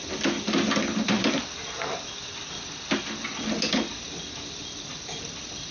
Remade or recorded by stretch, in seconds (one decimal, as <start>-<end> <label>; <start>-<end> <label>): 0.0-5.7 recorded